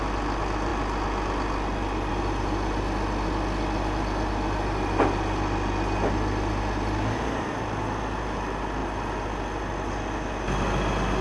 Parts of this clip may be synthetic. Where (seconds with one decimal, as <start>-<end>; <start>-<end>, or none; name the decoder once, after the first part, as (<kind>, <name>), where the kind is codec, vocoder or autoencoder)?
none